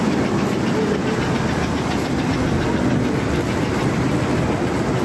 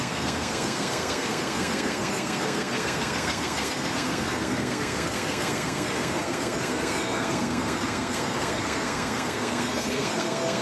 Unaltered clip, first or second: first